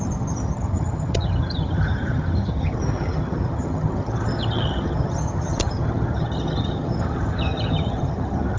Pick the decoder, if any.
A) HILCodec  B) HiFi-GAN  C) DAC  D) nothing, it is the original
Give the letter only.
B